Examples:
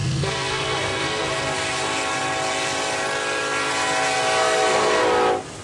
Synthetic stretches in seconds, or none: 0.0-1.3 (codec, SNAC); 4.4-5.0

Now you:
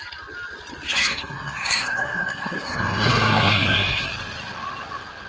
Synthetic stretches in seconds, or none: 0.9-4.1 (codec, SNAC)